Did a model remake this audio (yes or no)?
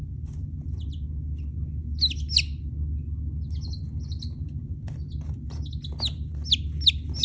no